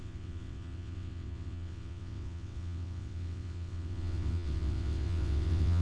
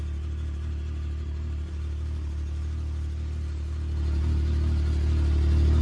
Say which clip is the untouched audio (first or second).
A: second